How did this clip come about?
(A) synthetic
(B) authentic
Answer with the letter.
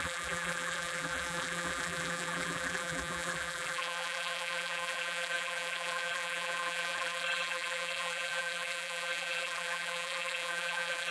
A